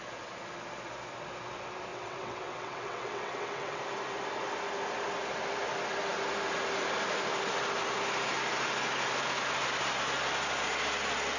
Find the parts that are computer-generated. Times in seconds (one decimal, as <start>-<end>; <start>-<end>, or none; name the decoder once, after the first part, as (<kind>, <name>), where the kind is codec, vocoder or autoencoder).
1.9-3.8 (vocoder, WaveNeXt)